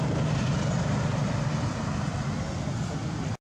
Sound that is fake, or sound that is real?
real